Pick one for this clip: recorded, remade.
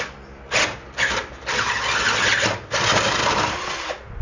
recorded